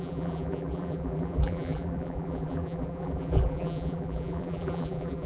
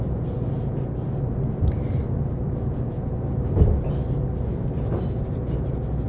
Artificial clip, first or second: first